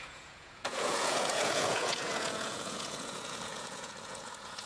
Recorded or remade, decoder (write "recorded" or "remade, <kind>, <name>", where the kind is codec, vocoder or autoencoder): remade, vocoder, Vocos